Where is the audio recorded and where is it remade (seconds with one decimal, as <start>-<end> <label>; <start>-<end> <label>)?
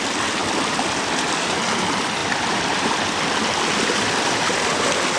0.0-0.4 recorded; 0.4-1.0 remade; 1.0-2.2 recorded; 2.2-3.2 remade; 3.2-5.2 recorded